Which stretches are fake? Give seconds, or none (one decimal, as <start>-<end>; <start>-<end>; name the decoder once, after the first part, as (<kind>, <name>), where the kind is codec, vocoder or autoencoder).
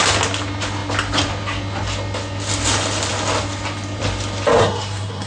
4.6-5.3 (codec, SNAC)